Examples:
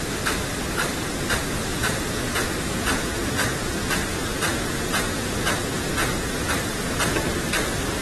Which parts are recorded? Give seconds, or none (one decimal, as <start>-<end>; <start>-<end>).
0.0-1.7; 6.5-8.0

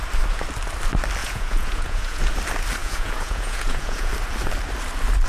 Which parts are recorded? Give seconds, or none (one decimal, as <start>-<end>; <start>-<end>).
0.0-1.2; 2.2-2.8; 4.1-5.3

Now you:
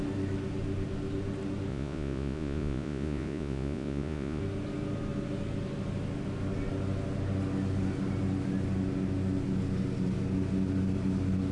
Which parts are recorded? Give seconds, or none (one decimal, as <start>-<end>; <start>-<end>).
0.0-1.7; 4.4-11.5

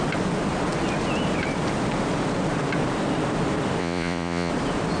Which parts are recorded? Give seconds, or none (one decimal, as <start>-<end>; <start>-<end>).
0.0-3.8; 4.5-5.0

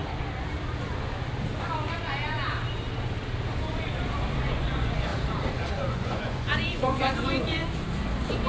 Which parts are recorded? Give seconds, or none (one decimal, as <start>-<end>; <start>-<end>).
0.0-4.4; 5.1-5.7; 7.6-8.5

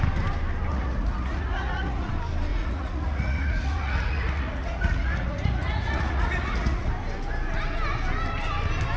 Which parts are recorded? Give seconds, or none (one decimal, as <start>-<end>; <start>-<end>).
0.0-0.7; 2.1-2.5; 6.9-9.0

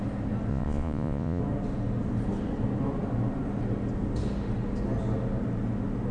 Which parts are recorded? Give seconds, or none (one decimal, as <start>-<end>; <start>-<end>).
0.0-0.5; 1.4-6.1

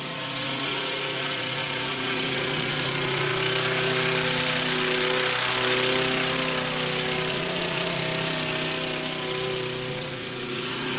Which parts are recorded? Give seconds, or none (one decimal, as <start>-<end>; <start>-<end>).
3.3-7.3; 8.0-9.9